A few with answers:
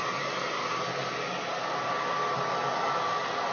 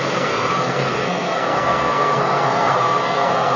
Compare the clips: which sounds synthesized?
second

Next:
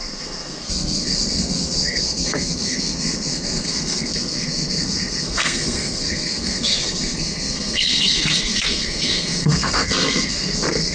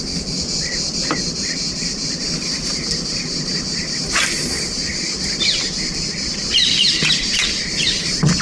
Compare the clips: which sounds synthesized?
first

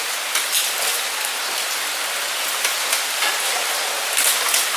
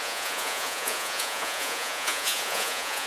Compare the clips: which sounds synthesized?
second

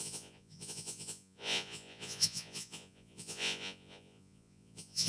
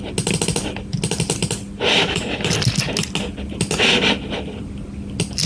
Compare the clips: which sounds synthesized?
first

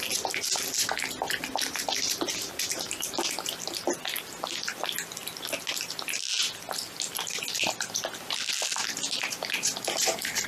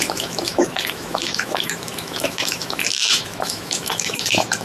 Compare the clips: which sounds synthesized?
second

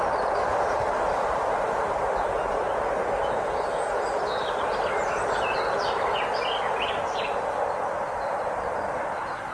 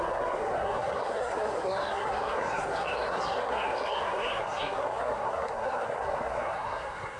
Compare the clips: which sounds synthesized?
second